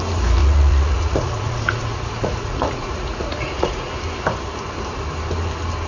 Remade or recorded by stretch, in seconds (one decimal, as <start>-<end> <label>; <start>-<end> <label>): 0.0-0.4 recorded; 0.4-3.9 remade; 3.9-5.9 recorded